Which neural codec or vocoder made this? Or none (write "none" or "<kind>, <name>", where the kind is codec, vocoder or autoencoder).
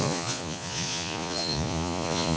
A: vocoder, Vocos